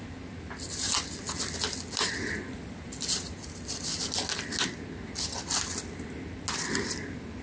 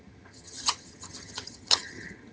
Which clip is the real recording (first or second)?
first